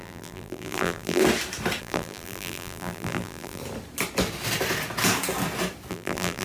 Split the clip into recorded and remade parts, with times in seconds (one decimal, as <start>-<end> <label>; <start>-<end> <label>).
0.0-1.2 remade; 1.2-1.8 recorded; 1.8-3.6 remade; 3.6-5.9 recorded; 5.9-6.4 remade